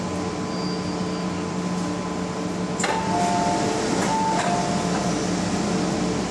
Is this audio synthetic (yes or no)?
no